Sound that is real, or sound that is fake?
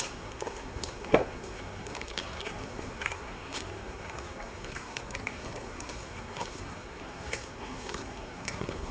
fake